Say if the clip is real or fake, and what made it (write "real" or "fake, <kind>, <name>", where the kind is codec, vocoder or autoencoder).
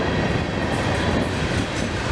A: real